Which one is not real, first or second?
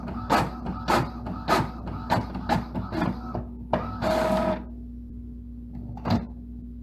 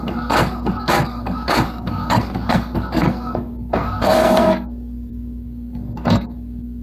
second